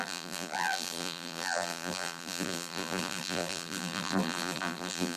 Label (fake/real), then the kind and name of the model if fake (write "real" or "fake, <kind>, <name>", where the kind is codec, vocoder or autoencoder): fake, vocoder, BigVGAN v2